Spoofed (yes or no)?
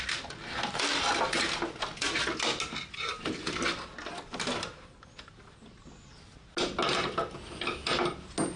no